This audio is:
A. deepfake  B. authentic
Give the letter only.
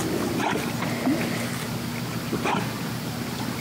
B